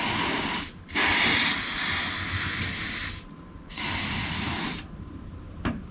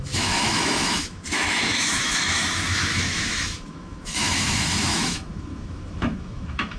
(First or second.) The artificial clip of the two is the second